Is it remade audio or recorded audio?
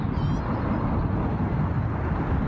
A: recorded